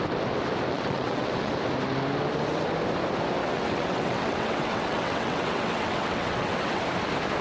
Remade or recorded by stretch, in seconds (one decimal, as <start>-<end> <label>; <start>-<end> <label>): 0.0-0.7 recorded; 0.7-1.5 remade; 1.5-3.4 recorded; 3.4-6.8 remade; 6.8-7.4 recorded

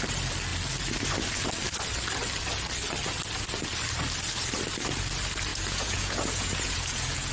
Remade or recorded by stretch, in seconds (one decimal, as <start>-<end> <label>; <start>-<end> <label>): 0.0-5.5 recorded; 5.5-7.3 remade

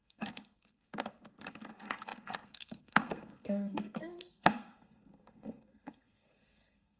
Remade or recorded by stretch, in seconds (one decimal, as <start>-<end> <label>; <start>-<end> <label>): 0.0-7.0 remade

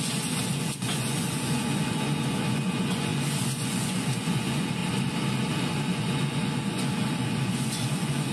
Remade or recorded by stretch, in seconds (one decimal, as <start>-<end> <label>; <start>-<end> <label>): 0.0-4.8 remade; 4.8-5.7 recorded; 5.7-8.3 remade

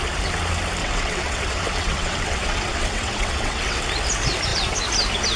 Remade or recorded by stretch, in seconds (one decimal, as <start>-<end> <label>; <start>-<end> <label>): 0.0-0.8 recorded; 0.8-3.8 remade; 3.8-5.4 recorded

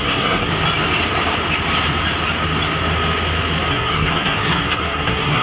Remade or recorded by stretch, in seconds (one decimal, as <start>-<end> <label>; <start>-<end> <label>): 0.0-0.5 remade; 0.5-3.7 recorded; 3.7-5.4 remade

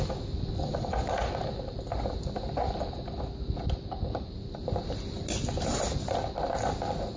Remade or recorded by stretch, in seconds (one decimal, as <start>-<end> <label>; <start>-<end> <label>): 0.0-7.2 recorded